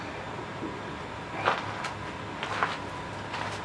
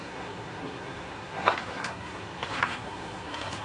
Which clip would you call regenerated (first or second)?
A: second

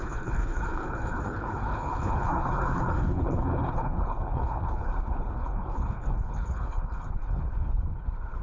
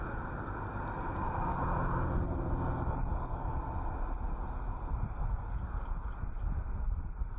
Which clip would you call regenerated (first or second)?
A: first